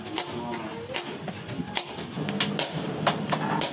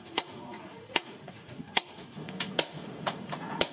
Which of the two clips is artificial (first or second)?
second